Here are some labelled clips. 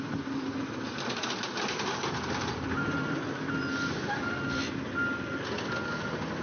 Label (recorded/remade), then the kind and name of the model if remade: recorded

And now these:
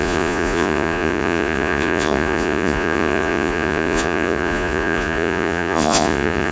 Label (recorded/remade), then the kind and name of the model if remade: remade, vocoder, Vocos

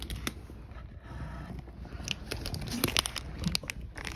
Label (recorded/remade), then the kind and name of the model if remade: recorded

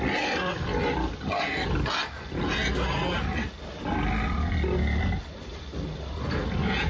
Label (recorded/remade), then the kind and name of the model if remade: recorded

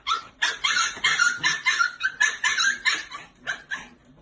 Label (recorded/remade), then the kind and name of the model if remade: recorded